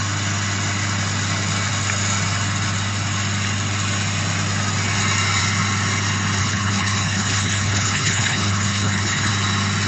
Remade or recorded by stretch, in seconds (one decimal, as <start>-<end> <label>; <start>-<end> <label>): 0.0-6.4 recorded; 6.4-9.3 remade; 9.3-9.9 recorded